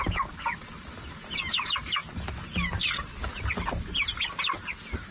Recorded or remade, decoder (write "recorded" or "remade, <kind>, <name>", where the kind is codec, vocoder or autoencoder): recorded